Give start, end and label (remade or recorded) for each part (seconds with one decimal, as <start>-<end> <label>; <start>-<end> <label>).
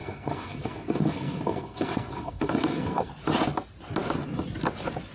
0.0-3.1 remade; 3.1-5.1 recorded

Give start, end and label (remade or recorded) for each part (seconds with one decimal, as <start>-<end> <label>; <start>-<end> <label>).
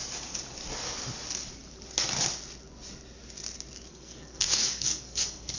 0.0-3.9 recorded; 3.9-5.6 remade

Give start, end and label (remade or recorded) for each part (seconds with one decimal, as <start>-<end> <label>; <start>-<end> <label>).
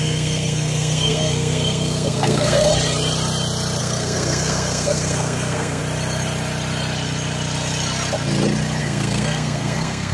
0.0-2.7 remade; 2.7-3.8 recorded; 3.8-5.8 remade; 5.8-8.8 recorded; 8.8-10.1 remade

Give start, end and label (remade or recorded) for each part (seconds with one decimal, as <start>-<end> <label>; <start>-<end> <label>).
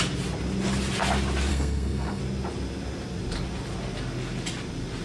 0.0-1.5 recorded; 1.5-2.2 remade; 2.2-5.0 recorded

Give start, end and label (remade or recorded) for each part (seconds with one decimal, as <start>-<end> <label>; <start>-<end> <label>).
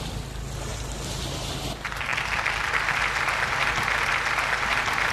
0.0-5.1 recorded